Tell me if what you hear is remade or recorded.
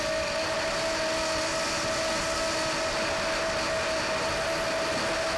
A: recorded